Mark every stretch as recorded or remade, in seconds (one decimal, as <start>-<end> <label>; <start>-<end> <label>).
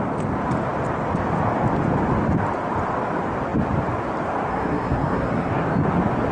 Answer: 0.0-4.5 recorded; 4.5-5.5 remade; 5.5-6.3 recorded